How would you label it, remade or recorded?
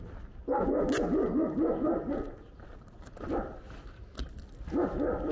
recorded